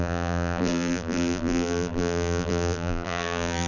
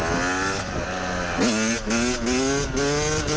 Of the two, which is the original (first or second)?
second